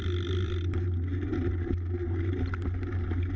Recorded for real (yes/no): yes